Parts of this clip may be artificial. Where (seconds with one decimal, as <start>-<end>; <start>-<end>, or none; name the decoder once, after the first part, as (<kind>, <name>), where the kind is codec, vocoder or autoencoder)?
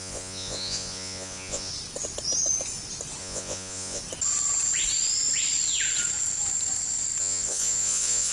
0.0-1.7 (vocoder, Vocos); 3.2-4.0; 7.2-8.3